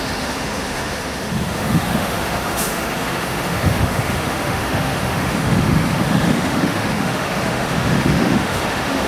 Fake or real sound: fake